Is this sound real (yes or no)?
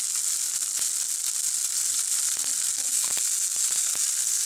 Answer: yes